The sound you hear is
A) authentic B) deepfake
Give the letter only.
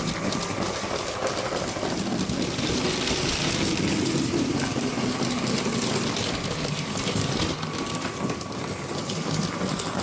B